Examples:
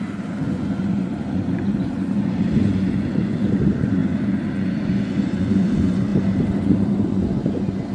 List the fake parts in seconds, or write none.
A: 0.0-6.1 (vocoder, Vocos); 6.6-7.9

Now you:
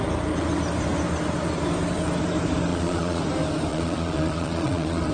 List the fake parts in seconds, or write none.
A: 2.7-3.2 (vocoder, Vocos); 3.7-5.1

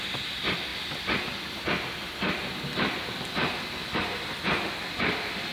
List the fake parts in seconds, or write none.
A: none